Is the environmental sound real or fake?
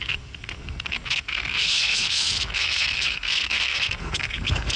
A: fake